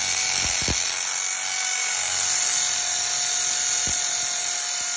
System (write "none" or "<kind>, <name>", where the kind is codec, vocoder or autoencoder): none